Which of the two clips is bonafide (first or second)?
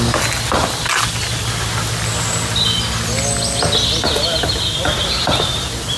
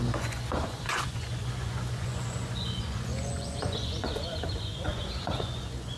first